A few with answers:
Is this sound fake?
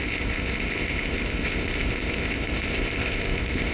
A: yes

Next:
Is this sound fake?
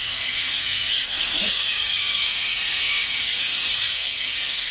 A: yes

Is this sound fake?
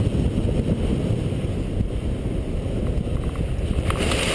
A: no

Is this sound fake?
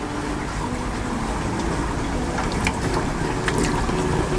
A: no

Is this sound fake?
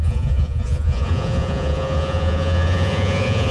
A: yes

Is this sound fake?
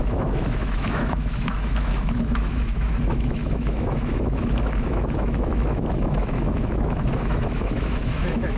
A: yes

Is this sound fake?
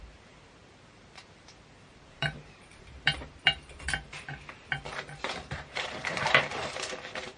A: yes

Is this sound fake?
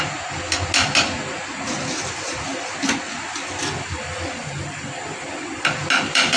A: no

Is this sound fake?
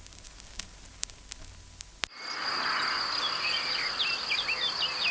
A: no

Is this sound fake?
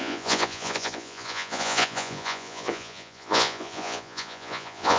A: yes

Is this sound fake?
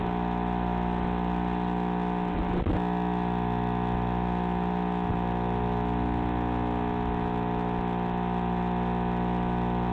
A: no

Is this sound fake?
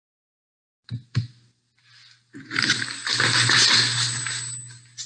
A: no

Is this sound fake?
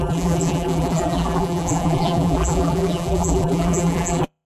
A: yes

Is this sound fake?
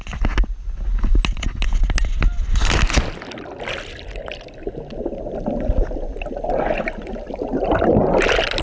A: no